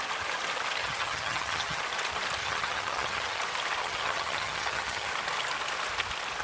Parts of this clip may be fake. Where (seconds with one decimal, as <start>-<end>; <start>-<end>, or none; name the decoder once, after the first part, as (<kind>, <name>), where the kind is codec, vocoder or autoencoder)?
0.8-1.8 (vocoder, HiFi-GAN); 2.4-3.4; 3.8-5.1